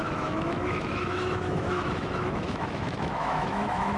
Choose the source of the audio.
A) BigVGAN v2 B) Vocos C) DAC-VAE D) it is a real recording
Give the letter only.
C